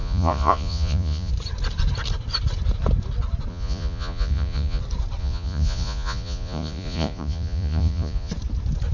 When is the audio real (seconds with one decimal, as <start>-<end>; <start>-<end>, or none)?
1.3-3.5; 4.8-5.2; 8.3-8.9

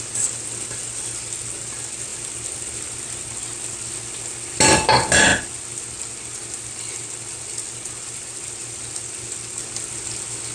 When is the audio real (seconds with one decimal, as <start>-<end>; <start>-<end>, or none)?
0.0-10.5

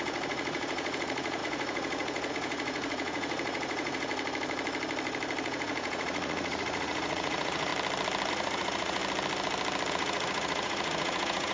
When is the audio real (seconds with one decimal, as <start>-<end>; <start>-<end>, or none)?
4.1-5.4; 7.7-8.3; 9.0-9.9

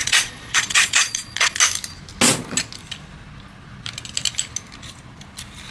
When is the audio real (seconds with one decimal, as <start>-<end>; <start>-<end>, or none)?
1.6-5.7